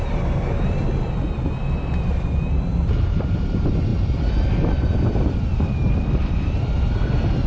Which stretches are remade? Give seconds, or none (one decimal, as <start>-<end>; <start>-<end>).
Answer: none